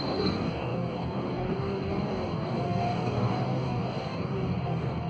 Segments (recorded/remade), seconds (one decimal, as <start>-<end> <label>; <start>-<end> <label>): 0.0-5.1 remade